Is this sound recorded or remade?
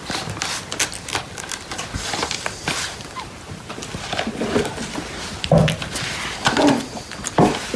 recorded